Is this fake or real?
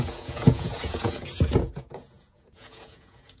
fake